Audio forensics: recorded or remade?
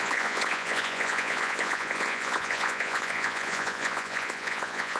remade